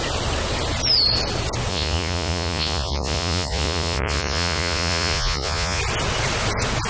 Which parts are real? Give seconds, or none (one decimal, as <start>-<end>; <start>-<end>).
0.0-1.7; 5.8-6.9